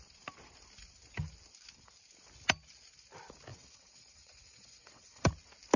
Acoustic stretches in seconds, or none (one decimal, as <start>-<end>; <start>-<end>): 0.0-3.5; 5.3-5.8